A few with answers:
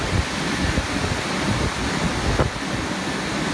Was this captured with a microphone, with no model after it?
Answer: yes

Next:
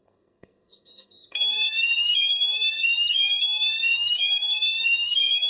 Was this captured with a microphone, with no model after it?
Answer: no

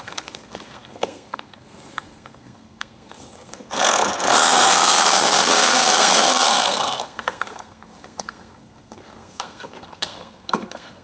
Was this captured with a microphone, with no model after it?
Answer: no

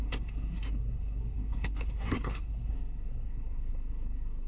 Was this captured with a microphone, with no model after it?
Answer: no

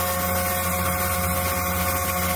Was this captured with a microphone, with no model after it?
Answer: yes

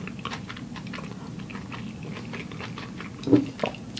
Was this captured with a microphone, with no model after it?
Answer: yes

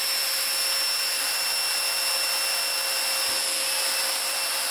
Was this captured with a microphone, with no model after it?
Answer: yes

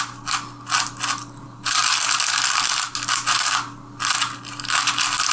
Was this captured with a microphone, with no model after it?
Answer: yes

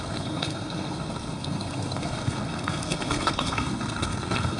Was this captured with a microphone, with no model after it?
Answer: no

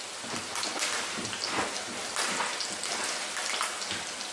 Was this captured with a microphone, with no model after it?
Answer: yes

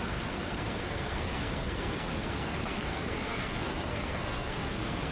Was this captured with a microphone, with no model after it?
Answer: no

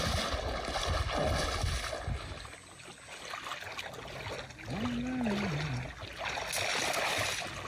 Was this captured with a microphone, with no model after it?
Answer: yes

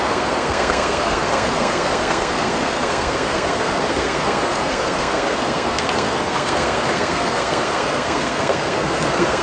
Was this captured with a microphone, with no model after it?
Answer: no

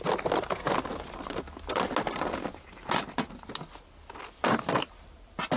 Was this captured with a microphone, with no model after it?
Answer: yes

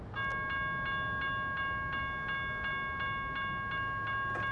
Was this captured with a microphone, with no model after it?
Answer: yes